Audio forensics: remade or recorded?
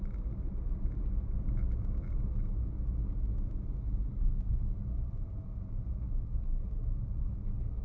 recorded